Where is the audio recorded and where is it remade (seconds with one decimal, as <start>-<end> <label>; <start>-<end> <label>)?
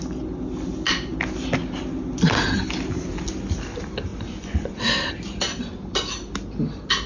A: 0.0-4.1 recorded; 4.1-4.7 remade; 4.7-7.1 recorded